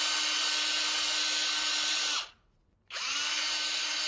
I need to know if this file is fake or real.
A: real